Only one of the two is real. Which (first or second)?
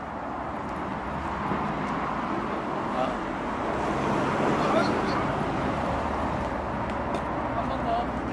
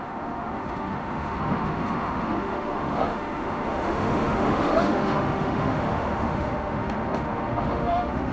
first